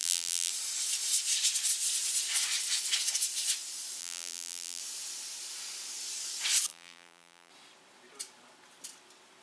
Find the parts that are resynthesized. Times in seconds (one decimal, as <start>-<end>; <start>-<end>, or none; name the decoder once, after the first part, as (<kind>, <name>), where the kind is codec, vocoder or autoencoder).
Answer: 0.0-0.5 (vocoder, BigVGAN v2); 4.0-4.8; 6.7-7.5